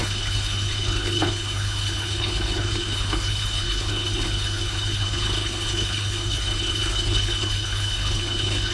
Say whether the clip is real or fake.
fake